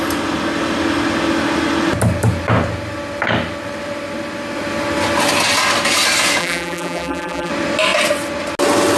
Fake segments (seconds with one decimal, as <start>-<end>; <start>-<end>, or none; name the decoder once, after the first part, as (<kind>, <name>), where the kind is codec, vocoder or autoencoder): 6.4-7.5 (vocoder, BigVGAN v2)